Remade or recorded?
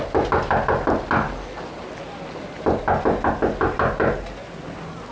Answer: recorded